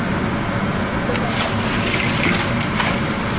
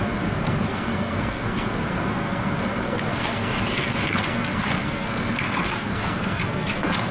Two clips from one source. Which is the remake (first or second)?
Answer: second